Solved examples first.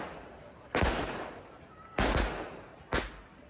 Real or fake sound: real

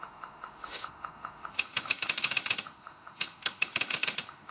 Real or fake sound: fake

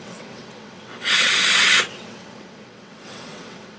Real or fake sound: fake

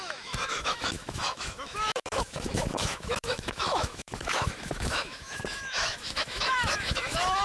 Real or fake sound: fake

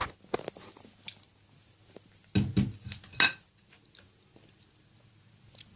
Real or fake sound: real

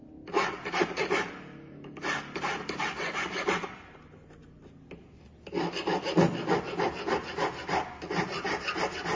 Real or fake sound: real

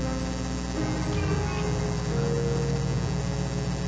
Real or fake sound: real